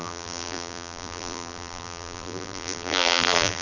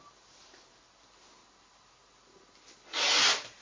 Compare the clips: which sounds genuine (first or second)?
second